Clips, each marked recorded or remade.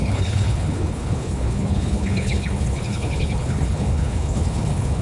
remade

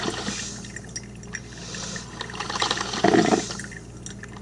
recorded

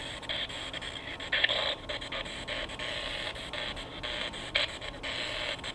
recorded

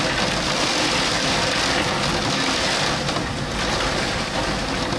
recorded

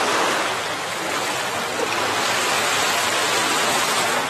recorded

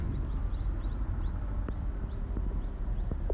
recorded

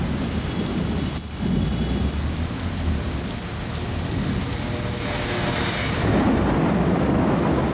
recorded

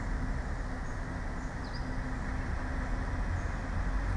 recorded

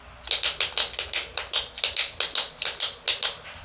recorded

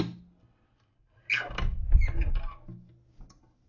recorded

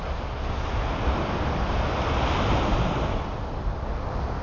recorded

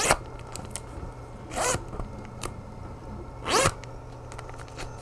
recorded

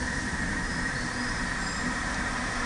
remade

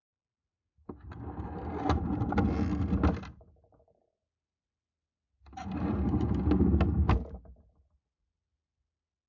recorded